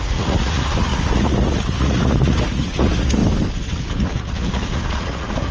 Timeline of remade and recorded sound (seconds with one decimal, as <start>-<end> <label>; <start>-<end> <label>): 0.0-3.2 remade; 3.2-4.0 recorded; 4.0-5.5 remade